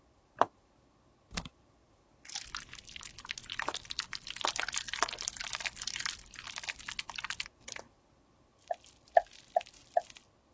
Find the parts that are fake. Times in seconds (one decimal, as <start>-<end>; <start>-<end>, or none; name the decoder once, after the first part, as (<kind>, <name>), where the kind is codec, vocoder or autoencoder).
none